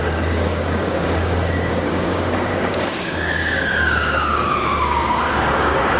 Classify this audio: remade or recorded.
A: remade